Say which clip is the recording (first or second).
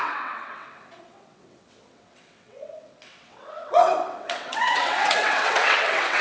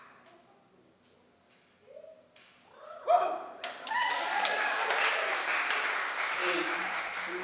second